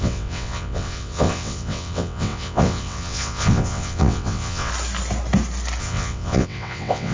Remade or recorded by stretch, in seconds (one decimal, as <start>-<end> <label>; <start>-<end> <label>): 0.0-4.7 remade; 4.7-5.8 recorded; 5.8-7.1 remade